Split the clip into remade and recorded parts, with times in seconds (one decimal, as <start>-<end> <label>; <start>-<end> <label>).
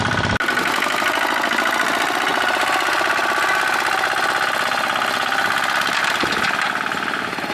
0.0-2.3 recorded; 2.3-3.1 remade; 3.1-7.5 recorded